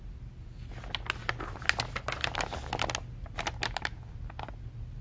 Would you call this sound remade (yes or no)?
no